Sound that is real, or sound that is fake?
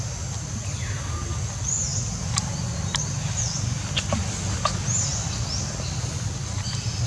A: real